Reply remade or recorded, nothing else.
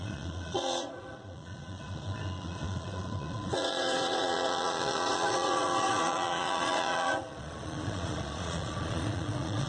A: remade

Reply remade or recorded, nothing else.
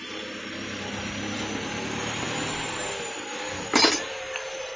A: recorded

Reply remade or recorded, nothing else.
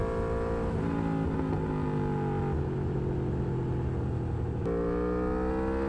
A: recorded